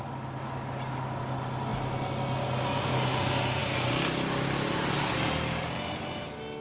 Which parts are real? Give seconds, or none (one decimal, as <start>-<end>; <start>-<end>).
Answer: 0.0-6.6